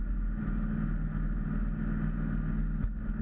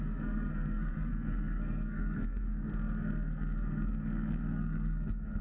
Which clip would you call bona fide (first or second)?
first